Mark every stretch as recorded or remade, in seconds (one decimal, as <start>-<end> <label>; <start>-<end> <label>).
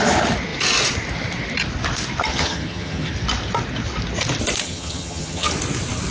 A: 0.0-2.3 recorded; 2.3-3.1 remade; 3.1-4.6 recorded; 4.6-5.5 remade; 5.5-6.1 recorded